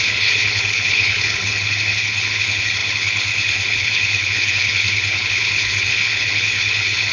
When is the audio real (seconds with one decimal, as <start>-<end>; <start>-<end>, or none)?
none